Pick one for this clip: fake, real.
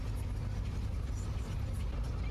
real